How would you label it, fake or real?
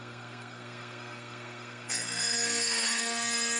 fake